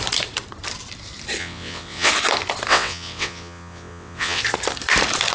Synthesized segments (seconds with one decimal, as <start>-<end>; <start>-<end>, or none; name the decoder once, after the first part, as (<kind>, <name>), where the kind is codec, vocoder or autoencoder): 1.4-2.1 (vocoder, WaveNeXt); 2.7-4.4